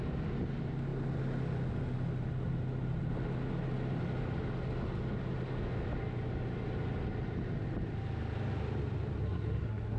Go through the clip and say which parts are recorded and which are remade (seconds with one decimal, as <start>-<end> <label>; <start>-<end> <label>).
0.0-9.2 recorded; 9.2-10.0 remade